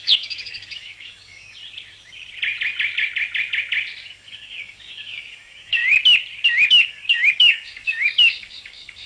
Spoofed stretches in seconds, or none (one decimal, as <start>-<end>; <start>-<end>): 0.0-1.6; 4.1-5.8; 6.7-9.1